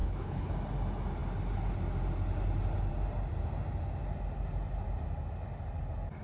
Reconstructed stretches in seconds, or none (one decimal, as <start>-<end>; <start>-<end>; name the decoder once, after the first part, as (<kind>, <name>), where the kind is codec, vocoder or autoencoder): 0.0-0.5 (codec, HILCodec)